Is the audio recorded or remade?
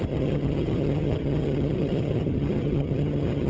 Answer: remade